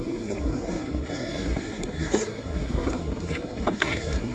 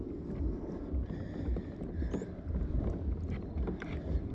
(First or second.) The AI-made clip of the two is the first